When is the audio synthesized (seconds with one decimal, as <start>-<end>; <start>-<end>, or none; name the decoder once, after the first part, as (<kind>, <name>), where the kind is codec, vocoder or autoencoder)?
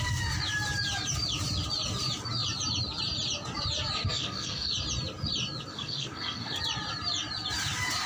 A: 4.1-4.7 (codec, SNAC); 5.7-6.6